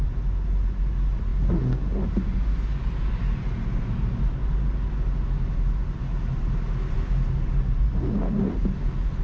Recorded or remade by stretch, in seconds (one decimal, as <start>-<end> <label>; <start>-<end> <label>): 0.0-9.2 recorded